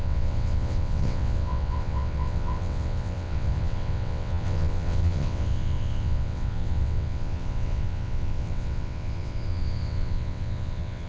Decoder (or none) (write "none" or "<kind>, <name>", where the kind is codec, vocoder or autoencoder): vocoder, WaveNeXt